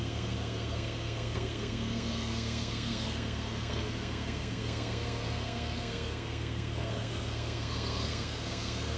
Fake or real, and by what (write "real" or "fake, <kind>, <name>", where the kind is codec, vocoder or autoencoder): fake, codec, SNAC